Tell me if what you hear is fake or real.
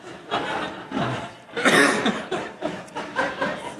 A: real